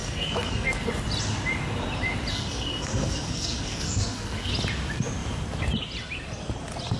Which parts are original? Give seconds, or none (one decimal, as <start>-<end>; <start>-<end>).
0.9-2.3; 4.5-7.0